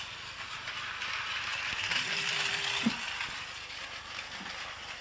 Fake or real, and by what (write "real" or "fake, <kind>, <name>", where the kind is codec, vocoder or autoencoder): real